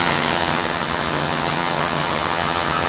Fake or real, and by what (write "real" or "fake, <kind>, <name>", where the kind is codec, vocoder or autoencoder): fake, vocoder, HiFi-GAN